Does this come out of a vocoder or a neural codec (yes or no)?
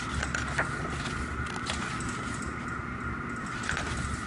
no